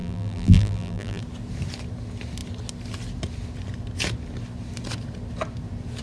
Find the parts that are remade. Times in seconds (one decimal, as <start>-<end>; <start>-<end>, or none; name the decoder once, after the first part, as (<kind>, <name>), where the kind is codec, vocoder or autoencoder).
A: 0.0-1.2 (vocoder, BigVGAN v2)